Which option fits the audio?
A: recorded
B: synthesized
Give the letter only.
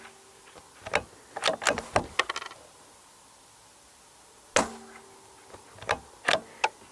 A